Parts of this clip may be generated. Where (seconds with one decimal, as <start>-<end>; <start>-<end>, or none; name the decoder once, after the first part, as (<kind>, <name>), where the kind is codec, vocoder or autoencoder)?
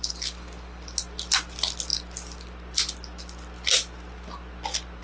none